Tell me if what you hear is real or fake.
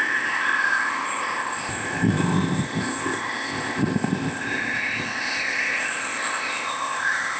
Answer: fake